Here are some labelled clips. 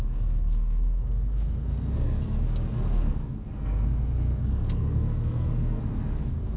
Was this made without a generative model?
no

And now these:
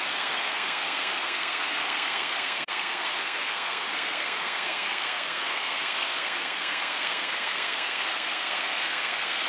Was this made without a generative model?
no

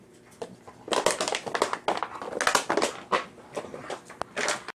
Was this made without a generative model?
yes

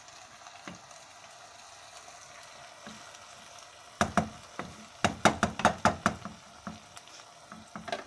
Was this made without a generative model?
yes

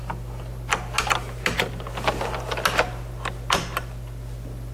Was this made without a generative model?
yes